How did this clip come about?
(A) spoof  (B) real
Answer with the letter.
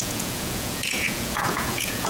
A